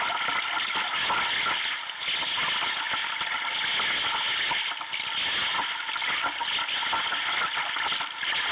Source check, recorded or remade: recorded